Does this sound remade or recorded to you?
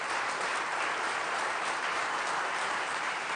remade